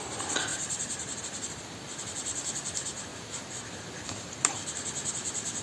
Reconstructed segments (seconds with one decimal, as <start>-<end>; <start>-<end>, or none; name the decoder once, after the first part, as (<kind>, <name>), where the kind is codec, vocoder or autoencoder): 0.5-1.2 (vocoder, BigVGAN v2)